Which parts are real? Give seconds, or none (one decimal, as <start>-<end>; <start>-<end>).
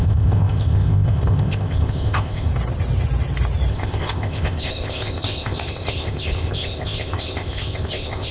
2.5-3.7